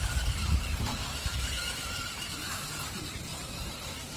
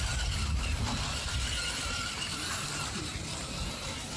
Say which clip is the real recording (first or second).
second